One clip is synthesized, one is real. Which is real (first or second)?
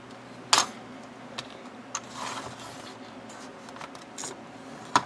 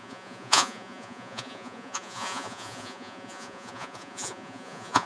first